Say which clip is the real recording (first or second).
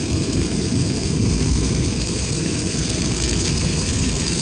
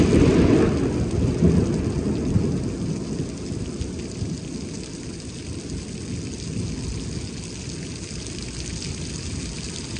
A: second